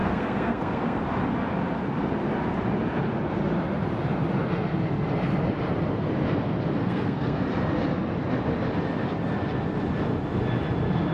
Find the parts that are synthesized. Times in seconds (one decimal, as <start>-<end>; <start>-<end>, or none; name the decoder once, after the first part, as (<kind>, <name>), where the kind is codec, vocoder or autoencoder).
0.0-1.0 (codec, SNAC); 6.8-7.4